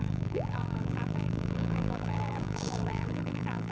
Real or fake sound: fake